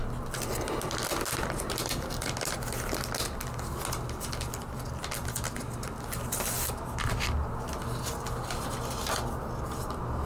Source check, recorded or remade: recorded